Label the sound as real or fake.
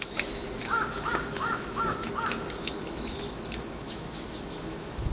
fake